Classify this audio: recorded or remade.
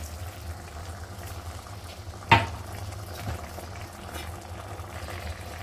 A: recorded